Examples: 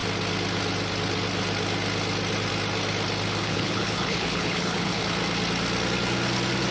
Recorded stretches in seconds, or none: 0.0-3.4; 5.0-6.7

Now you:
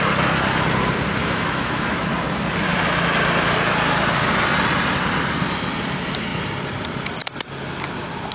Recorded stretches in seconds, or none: 0.0-1.2; 2.1-8.3

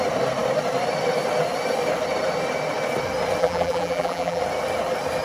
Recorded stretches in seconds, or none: 0.0-3.4; 4.4-5.2

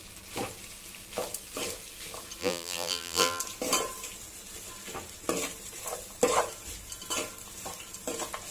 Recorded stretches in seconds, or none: 0.0-2.4; 3.4-8.5